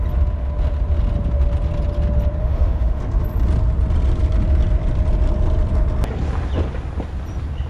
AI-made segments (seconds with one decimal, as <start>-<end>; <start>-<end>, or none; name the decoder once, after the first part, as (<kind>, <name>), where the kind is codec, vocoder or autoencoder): 2.4-3.0 (autoencoder, DAC-VAE)